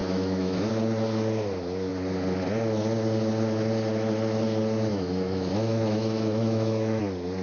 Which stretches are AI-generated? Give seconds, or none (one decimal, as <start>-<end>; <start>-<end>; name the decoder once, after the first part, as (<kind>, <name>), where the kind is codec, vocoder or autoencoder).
0.0-0.7 (autoencoder, DAC-VAE); 4.9-7.0